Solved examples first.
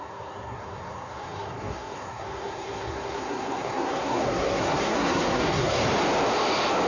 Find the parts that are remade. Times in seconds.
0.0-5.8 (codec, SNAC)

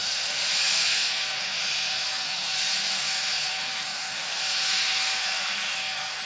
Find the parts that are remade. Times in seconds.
0.0-6.3 (codec, SNAC)

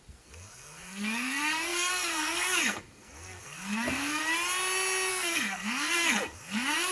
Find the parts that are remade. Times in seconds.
0.0-4.2 (codec, SNAC); 5.1-6.9

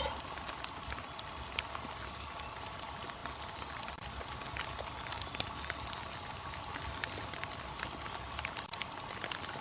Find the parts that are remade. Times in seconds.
none

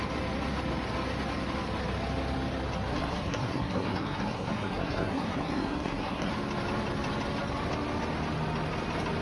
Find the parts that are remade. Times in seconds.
2.9-6.3 (codec, SNAC)